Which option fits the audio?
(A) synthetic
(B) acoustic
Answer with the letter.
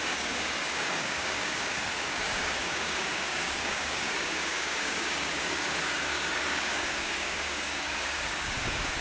A